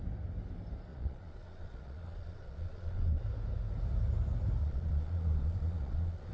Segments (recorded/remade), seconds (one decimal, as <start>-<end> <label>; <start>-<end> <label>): 0.0-0.9 recorded; 0.9-3.2 remade; 3.2-4.6 recorded; 4.6-6.3 remade